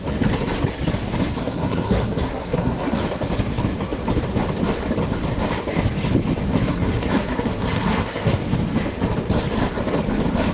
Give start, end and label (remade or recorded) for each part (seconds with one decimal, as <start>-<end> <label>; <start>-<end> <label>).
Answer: 0.0-1.3 recorded; 1.3-3.0 remade; 3.0-6.7 recorded; 6.7-8.4 remade; 8.4-10.5 recorded